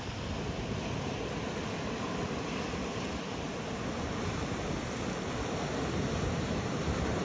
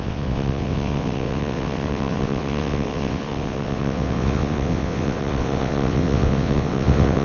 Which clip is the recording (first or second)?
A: first